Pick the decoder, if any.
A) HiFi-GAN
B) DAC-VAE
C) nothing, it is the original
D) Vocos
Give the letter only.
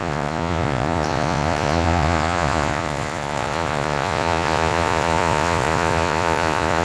D